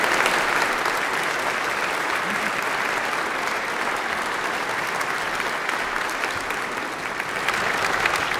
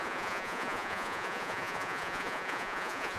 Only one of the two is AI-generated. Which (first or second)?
second